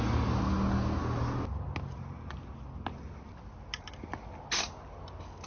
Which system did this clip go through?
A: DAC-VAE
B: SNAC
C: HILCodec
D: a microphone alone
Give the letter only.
D